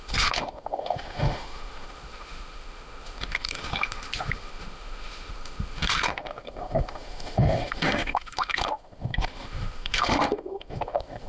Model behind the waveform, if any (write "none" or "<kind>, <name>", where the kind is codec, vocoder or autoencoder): autoencoder, DAC-VAE